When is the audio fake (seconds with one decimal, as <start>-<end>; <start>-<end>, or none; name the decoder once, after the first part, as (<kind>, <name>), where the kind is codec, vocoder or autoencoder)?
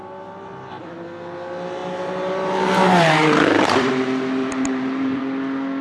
1.8-3.9 (vocoder, BigVGAN v2); 4.4-5.2